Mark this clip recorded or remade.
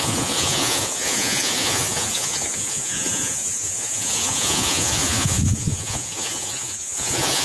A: remade